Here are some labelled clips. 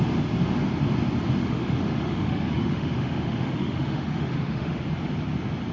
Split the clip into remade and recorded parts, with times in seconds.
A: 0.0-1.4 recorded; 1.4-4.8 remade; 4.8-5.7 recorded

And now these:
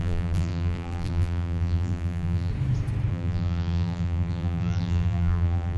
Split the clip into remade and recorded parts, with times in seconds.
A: 0.0-2.5 remade; 2.5-3.1 recorded; 3.1-5.8 remade

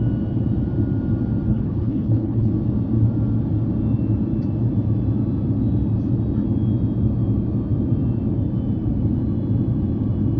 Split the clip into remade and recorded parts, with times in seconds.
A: 0.0-1.5 recorded; 1.5-2.5 remade; 2.5-10.4 recorded

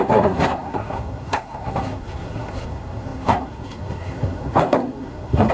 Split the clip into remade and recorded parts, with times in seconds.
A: 0.0-5.5 remade